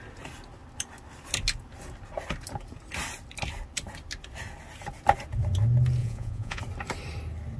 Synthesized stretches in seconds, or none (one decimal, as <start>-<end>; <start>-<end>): 6.0-6.6